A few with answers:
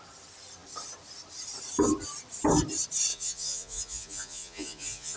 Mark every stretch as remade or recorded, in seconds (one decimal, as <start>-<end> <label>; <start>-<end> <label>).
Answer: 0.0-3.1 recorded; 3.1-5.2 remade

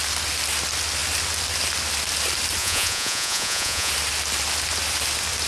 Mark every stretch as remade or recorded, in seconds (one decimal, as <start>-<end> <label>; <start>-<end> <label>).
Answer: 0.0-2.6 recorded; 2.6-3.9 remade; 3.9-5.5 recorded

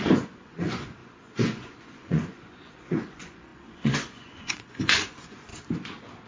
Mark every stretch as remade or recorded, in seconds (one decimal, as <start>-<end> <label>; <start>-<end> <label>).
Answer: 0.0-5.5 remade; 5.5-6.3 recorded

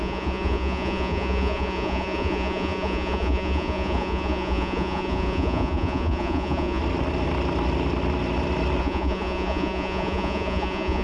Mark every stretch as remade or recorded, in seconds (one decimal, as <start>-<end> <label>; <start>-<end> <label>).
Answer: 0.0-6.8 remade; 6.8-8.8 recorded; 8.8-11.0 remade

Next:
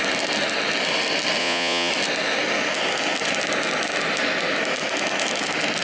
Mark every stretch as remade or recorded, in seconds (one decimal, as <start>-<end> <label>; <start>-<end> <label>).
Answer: 0.0-1.4 recorded; 1.4-1.9 remade; 1.9-5.8 recorded

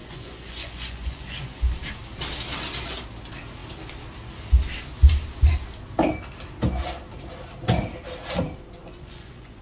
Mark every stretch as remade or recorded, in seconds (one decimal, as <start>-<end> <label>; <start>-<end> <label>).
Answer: 0.0-1.6 remade; 1.6-8.8 recorded; 8.8-9.6 remade

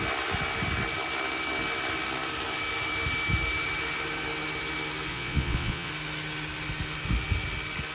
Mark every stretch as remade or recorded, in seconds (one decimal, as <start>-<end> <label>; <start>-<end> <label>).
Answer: 0.0-5.1 recorded; 5.1-5.9 remade; 5.9-7.9 recorded

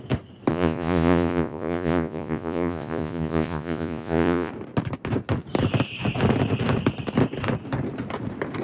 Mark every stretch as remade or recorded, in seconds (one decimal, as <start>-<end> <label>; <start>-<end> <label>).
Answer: 0.0-0.5 recorded; 0.5-4.5 remade; 4.5-8.6 recorded